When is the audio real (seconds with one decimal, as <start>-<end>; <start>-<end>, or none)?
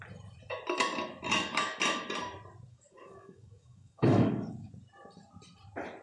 0.0-2.7; 4.7-6.0